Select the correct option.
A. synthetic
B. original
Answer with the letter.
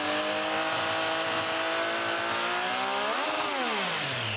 B